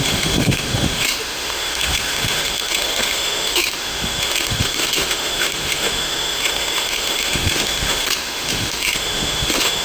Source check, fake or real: fake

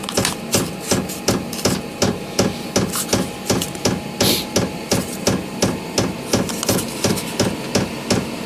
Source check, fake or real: real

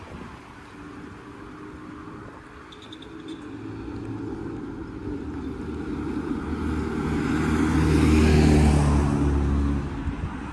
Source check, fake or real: real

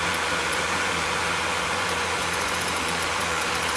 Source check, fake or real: fake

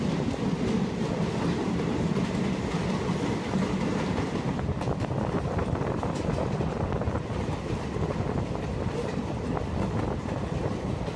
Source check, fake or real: real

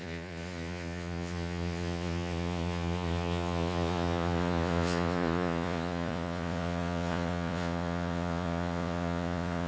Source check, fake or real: fake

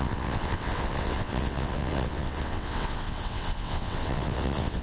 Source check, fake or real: fake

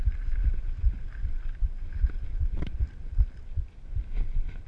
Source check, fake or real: fake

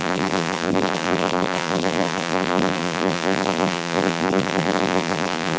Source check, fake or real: fake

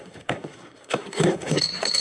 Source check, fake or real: fake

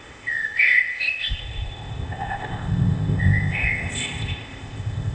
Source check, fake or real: fake